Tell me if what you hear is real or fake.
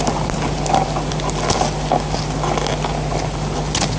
real